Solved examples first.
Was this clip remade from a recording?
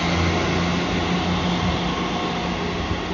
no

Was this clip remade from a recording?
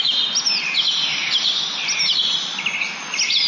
no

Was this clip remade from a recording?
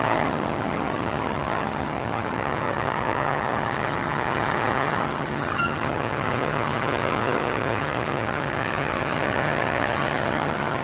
yes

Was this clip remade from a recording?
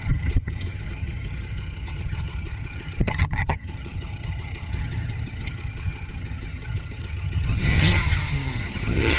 yes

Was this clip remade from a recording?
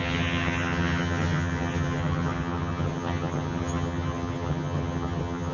yes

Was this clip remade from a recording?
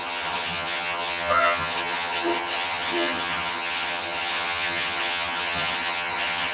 yes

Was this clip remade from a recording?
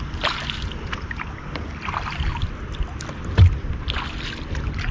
no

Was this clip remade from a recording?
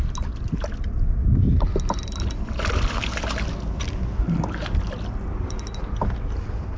no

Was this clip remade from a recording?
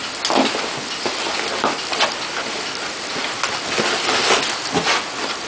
no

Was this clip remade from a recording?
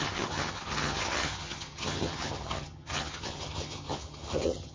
yes